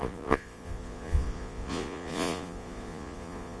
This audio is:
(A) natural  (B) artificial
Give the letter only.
B